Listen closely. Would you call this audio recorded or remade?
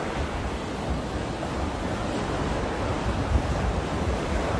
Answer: recorded